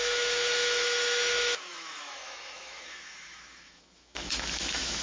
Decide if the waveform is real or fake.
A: fake